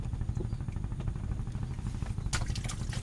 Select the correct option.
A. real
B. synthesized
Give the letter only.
A